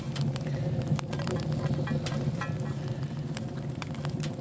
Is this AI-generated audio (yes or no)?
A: no